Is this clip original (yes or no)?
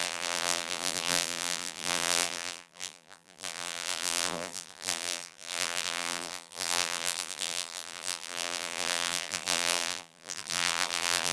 no